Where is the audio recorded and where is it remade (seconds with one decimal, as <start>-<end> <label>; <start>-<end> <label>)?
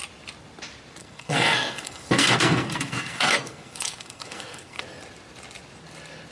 0.0-1.0 recorded; 1.0-4.8 remade; 4.8-6.3 recorded